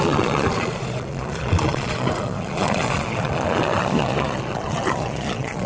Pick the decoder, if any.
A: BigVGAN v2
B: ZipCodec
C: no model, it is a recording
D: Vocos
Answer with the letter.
D